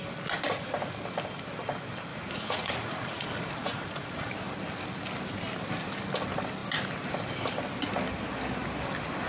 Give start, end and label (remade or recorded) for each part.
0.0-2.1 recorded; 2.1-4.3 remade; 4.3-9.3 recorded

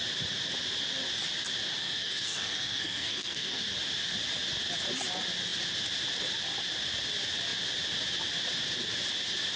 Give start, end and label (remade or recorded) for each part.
0.0-1.8 recorded; 1.8-3.6 remade; 3.6-9.6 recorded